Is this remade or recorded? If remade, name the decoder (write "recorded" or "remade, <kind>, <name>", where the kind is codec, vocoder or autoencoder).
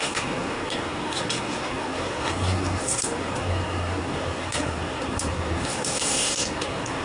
remade, codec, SNAC